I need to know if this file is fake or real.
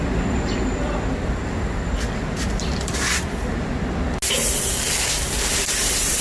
real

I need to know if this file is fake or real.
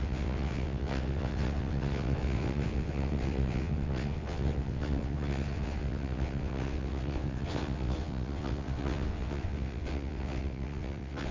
fake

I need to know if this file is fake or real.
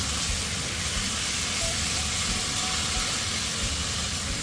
real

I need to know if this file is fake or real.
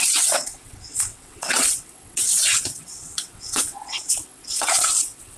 fake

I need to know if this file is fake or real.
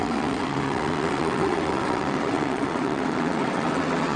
fake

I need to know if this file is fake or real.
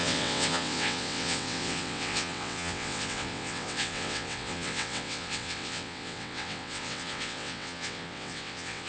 fake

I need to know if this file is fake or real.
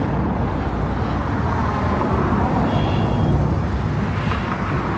real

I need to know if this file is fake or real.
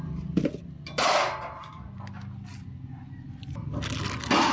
real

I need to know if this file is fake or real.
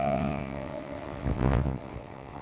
fake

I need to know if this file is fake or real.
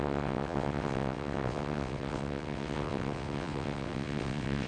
fake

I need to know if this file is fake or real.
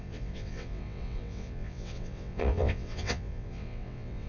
fake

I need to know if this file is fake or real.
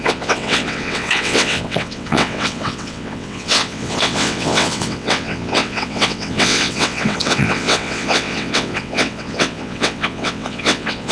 fake